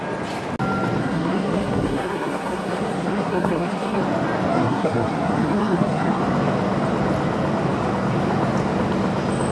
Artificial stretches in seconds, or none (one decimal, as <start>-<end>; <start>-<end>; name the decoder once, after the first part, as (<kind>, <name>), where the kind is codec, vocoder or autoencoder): 1.0-4.0 (codec, SNAC); 4.5-6.2